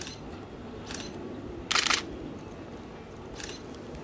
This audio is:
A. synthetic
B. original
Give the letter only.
B